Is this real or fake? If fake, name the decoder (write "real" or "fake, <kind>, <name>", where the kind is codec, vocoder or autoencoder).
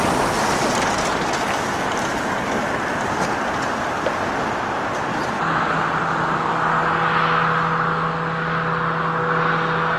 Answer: real